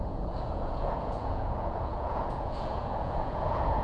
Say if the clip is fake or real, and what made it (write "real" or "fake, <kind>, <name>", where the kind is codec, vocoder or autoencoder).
fake, vocoder, Vocos